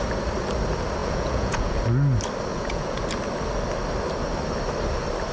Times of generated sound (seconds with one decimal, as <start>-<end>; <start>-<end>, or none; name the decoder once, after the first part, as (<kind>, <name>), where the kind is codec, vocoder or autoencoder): 1.0-1.8 (vocoder, Vocos); 2.5-3.0